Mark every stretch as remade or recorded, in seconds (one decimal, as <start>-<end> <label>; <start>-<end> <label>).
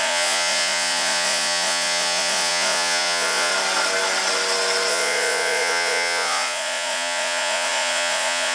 0.0-3.5 remade; 3.5-4.9 recorded; 4.9-8.5 remade